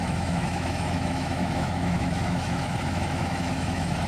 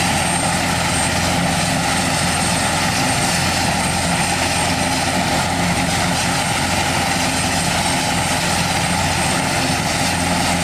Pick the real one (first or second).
second